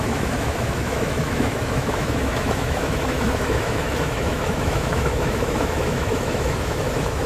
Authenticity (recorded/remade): remade